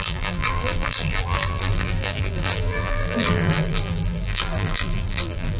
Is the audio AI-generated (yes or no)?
yes